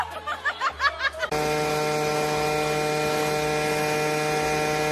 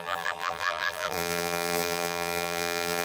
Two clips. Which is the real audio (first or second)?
first